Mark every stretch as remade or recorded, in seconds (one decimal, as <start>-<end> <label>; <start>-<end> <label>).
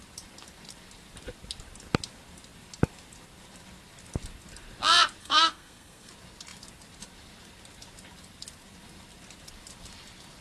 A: 0.0-5.2 recorded; 5.2-6.1 remade; 6.1-10.4 recorded